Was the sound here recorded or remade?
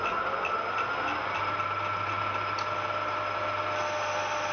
recorded